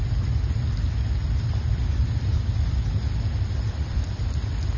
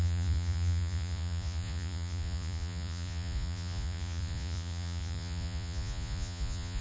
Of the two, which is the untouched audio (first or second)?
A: first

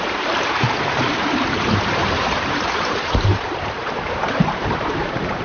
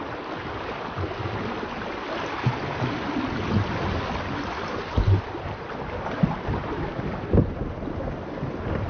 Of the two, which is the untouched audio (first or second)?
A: second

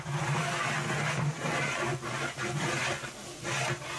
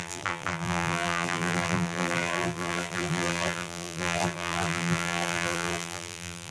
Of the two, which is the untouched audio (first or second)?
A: first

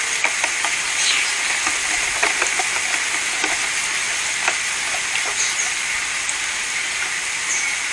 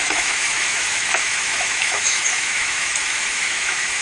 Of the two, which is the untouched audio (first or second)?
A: first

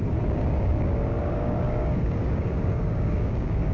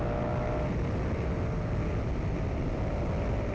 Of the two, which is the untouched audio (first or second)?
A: second